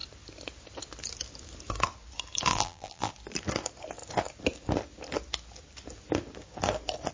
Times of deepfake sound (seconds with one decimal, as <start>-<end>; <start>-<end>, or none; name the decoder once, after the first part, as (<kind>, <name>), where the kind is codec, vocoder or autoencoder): 2.5-3.1 (vocoder, BigVGAN v2)